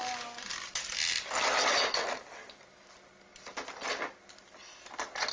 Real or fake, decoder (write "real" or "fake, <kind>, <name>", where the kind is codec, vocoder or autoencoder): real